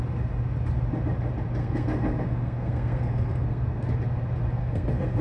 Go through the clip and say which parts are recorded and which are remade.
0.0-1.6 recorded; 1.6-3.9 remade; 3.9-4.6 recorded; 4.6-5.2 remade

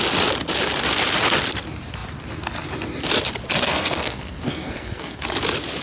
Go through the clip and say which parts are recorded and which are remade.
0.0-3.6 recorded; 3.6-5.2 remade; 5.2-5.8 recorded

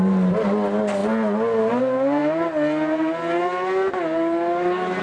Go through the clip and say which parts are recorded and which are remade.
0.0-5.0 recorded

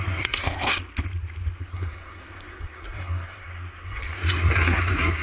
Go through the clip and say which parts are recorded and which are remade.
0.0-0.8 remade; 0.8-1.6 recorded; 1.6-5.2 remade

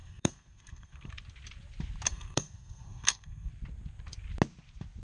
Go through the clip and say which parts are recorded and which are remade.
0.0-1.1 remade; 1.1-2.1 recorded; 2.1-3.5 remade; 3.5-5.0 recorded

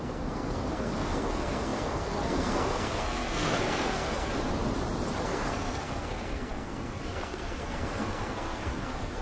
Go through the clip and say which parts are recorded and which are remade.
0.0-4.3 remade; 4.3-5.2 recorded; 5.2-9.2 remade